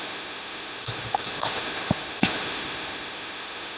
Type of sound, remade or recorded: remade